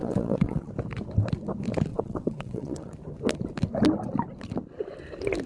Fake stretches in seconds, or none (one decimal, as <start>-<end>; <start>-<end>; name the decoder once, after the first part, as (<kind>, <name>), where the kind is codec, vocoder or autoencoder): 0.0-0.7 (vocoder, WaveNeXt); 1.9-2.9